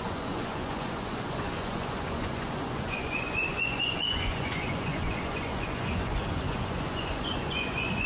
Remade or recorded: remade